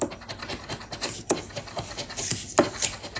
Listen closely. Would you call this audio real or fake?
real